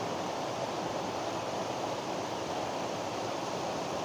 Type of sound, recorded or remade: remade